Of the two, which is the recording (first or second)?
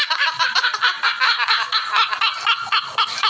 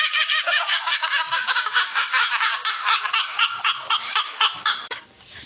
first